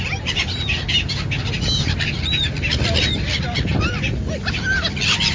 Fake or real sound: real